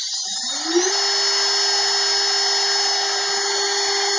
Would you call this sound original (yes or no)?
yes